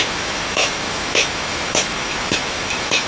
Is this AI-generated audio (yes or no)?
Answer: yes